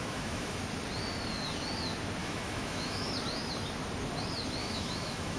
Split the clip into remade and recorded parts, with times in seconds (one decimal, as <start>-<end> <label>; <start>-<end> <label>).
0.0-0.6 remade; 0.6-2.2 recorded; 2.2-3.1 remade; 3.1-4.6 recorded; 4.6-5.4 remade